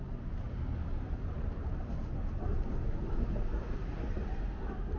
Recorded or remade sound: recorded